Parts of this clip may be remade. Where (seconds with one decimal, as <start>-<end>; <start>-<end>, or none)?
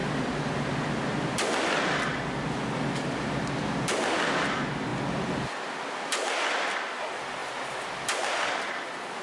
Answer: none